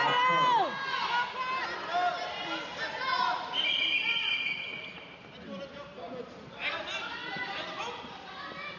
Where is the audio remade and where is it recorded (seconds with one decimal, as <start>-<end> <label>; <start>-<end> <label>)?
0.0-8.8 recorded